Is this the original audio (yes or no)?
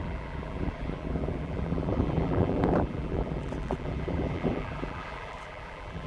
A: no